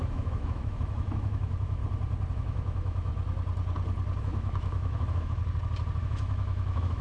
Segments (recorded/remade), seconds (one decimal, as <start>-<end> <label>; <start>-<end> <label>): 0.0-1.8 remade; 1.8-2.3 recorded; 2.3-3.1 remade; 3.1-4.2 recorded; 4.2-5.4 remade; 5.4-6.0 recorded; 6.0-7.0 remade